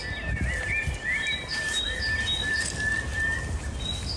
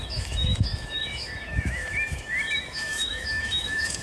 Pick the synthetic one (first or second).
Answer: second